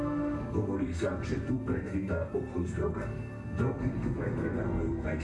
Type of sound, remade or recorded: remade